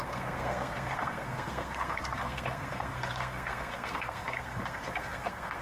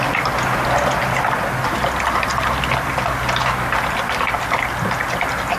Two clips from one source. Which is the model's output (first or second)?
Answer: first